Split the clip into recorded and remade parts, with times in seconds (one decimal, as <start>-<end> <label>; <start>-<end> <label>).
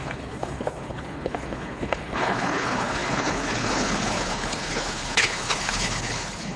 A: 0.0-6.6 remade